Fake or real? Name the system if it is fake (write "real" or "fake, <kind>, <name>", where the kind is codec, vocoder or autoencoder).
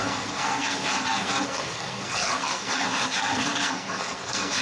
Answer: fake, codec, SNAC